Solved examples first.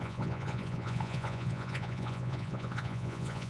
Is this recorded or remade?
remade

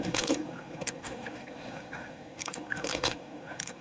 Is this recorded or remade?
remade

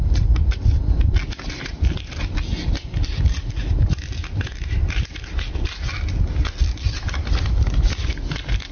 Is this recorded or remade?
recorded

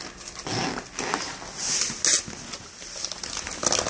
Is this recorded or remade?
recorded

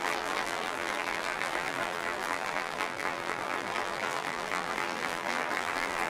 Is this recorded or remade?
remade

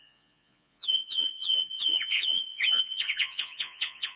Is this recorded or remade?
remade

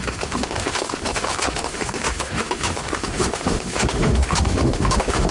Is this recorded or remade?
remade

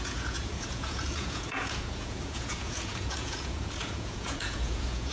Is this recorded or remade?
remade